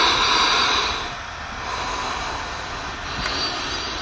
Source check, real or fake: real